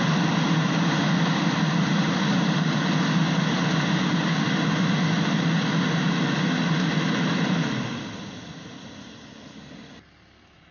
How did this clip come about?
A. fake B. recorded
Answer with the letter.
B